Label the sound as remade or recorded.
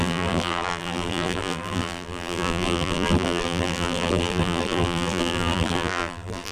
remade